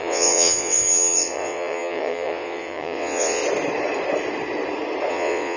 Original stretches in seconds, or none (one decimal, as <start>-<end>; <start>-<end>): 3.4-5.1